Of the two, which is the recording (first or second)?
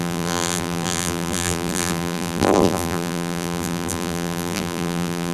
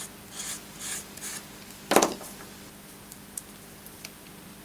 second